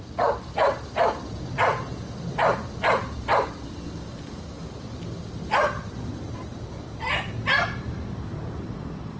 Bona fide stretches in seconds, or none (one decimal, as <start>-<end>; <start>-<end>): 0.0-9.2